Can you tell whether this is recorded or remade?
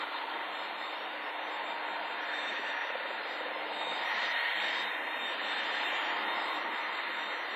recorded